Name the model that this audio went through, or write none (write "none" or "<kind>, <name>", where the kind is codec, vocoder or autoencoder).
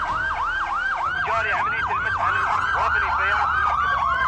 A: none